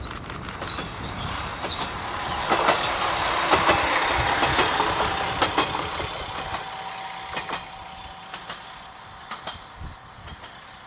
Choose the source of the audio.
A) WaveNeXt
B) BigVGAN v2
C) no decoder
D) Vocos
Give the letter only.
C